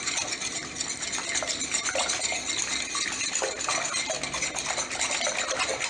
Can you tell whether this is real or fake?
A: real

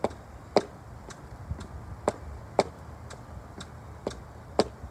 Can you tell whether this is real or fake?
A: real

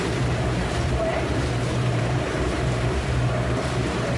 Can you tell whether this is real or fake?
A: fake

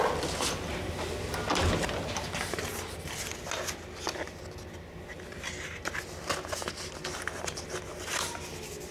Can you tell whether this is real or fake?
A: real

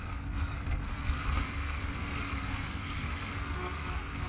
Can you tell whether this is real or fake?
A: fake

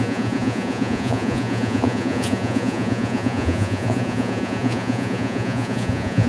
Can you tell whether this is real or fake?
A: fake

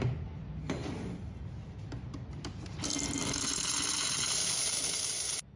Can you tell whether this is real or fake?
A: real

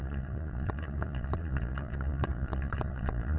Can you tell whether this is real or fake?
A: fake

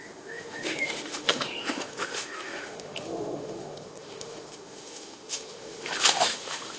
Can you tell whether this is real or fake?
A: fake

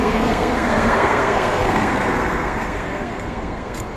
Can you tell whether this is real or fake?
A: fake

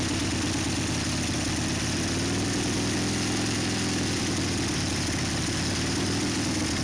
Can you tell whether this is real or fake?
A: real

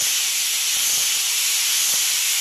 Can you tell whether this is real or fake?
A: real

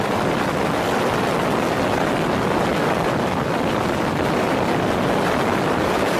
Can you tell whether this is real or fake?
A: fake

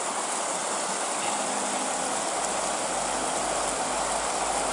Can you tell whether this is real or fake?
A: real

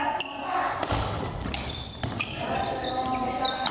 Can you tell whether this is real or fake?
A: real